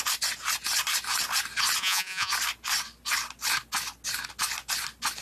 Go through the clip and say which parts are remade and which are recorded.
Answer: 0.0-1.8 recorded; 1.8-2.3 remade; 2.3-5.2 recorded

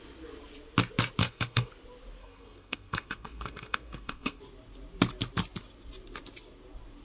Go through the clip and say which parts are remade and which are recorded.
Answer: 0.0-1.2 recorded; 1.2-1.7 remade; 1.7-2.2 recorded; 2.2-4.4 remade; 4.4-7.0 recorded

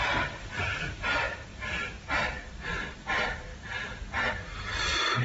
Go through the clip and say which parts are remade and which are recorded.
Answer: 0.0-3.5 remade; 3.5-4.3 recorded; 4.3-5.2 remade